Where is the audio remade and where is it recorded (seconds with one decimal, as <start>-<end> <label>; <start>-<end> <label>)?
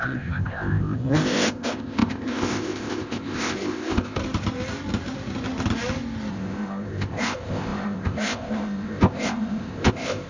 0.0-4.2 remade; 4.2-6.3 recorded; 6.3-10.3 remade